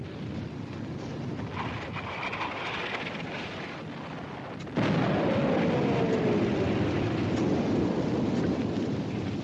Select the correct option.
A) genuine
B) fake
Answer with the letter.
A